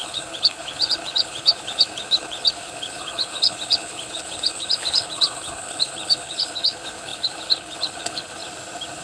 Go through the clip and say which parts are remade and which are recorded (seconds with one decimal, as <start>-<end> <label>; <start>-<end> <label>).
0.0-8.4 remade; 8.4-9.0 recorded